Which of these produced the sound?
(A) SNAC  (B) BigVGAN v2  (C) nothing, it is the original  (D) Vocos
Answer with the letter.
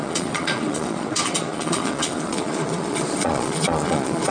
D